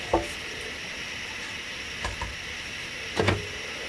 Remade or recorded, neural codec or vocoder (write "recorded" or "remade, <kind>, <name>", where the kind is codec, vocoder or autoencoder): recorded